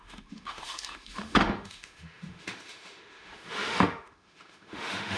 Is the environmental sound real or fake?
fake